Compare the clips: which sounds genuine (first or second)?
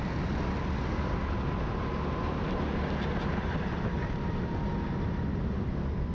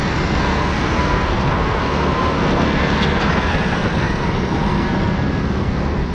first